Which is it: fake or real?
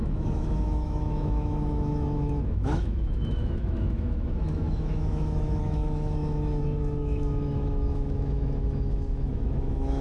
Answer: fake